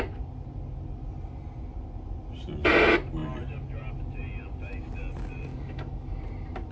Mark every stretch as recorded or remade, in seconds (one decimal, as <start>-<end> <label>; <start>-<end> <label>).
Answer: 0.0-5.5 recorded; 5.5-6.2 remade; 6.2-6.7 recorded